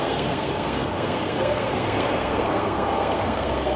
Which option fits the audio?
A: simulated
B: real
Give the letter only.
A